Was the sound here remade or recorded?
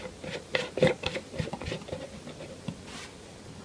recorded